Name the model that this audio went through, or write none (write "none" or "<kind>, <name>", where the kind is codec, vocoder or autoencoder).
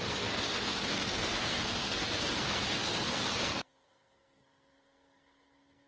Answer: codec, SNAC